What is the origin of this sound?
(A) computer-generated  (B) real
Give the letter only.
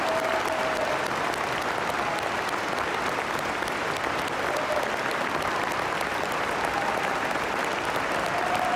B